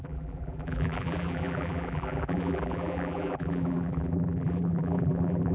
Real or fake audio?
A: fake